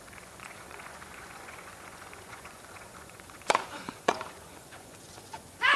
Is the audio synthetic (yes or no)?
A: yes